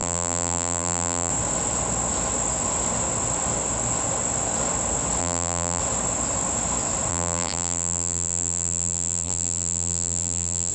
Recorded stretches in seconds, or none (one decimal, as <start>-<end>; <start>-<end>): 1.3-5.2; 5.8-7.1